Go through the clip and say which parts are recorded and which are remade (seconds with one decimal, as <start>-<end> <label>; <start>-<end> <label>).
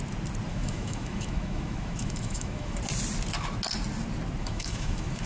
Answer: 0.0-0.5 recorded; 0.5-2.8 remade; 2.8-4.4 recorded; 4.4-5.3 remade